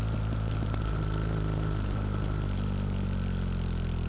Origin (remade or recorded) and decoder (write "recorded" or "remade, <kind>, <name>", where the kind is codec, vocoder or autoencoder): recorded